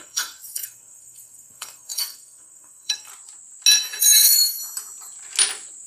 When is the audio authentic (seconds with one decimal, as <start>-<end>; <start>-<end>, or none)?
3.1-4.0; 4.6-5.9